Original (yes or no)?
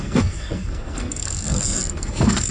no